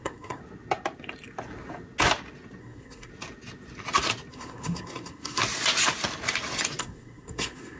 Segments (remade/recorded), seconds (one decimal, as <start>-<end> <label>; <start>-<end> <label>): 0.0-0.4 remade; 0.4-2.6 recorded; 2.6-3.1 remade; 3.1-4.3 recorded; 4.3-5.4 remade; 5.4-6.8 recorded; 6.8-7.8 remade